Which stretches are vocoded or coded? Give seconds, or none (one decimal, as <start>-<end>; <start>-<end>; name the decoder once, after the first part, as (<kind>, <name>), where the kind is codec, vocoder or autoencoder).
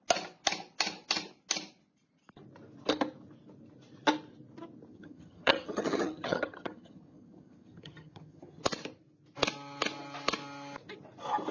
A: 4.9-8.6 (vocoder, HiFi-GAN)